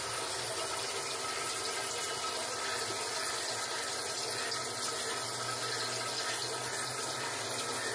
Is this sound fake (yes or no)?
no